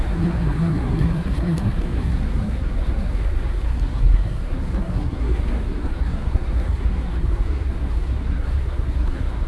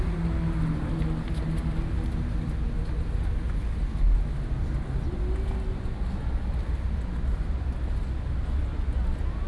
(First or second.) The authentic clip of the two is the second